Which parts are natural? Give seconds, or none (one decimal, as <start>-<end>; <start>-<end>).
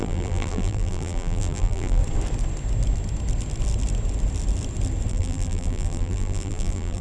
2.0-5.1